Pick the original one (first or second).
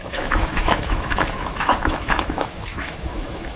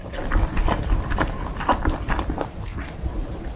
second